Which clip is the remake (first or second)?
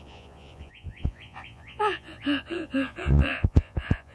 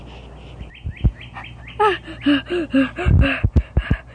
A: first